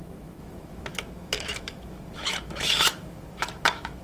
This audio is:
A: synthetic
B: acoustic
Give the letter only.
A